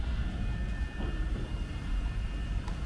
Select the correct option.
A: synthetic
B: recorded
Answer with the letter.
B